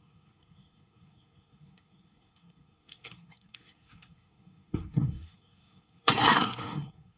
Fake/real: fake